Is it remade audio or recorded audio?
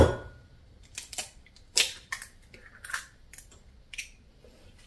remade